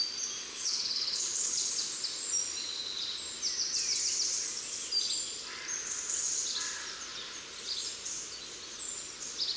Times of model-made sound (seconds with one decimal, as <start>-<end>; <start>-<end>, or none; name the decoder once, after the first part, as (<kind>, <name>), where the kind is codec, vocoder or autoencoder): 0.5-1.7 (codec, HILCodec)